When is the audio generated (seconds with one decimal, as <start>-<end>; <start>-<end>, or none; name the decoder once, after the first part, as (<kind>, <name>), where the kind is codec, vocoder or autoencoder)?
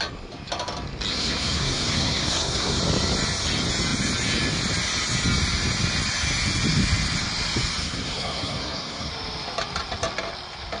1.1-2.8 (codec, SNAC); 7.8-9.1